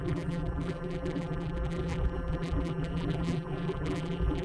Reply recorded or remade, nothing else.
remade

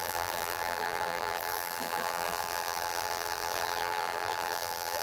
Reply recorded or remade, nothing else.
remade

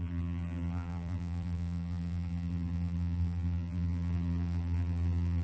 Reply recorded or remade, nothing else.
remade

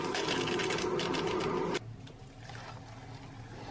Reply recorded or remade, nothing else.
recorded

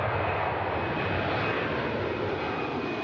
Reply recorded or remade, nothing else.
recorded